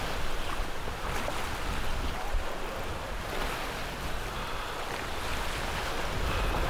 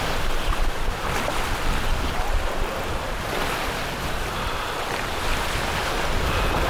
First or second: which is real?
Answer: first